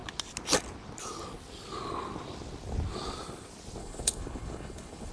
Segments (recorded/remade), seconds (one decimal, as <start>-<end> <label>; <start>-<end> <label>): 0.0-3.8 recorded; 3.8-5.1 remade

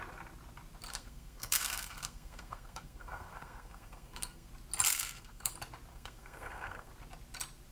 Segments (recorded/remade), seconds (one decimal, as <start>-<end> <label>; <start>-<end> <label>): 0.0-0.9 recorded; 0.9-4.5 remade; 4.5-4.9 recorded; 4.9-5.5 remade; 5.5-5.9 recorded; 5.9-6.9 remade; 6.9-7.7 recorded

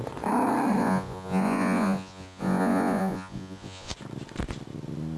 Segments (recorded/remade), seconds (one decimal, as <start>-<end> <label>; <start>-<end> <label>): 0.0-0.8 recorded; 0.8-3.9 remade; 3.9-5.2 recorded

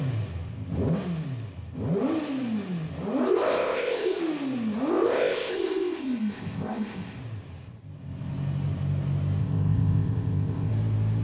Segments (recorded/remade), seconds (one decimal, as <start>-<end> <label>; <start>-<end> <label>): 0.0-3.2 recorded; 3.2-4.2 remade; 4.2-4.9 recorded; 4.9-7.2 remade; 7.2-9.4 recorded; 9.4-10.7 remade; 10.7-11.2 recorded

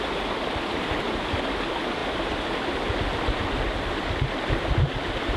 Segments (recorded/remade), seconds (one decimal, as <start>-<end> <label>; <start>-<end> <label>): 0.0-5.4 recorded

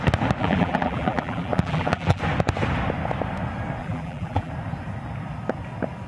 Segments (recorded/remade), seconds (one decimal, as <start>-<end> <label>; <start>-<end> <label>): 0.0-0.4 recorded; 0.4-2.2 remade; 2.2-3.8 recorded; 3.8-4.5 remade; 4.5-6.1 recorded

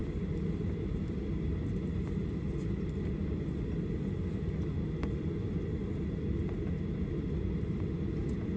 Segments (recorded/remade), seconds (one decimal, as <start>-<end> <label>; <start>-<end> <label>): 0.0-8.6 recorded

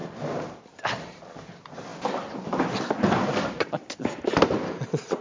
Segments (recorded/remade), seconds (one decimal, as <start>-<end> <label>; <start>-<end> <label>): 0.0-0.6 recorded; 0.6-5.2 remade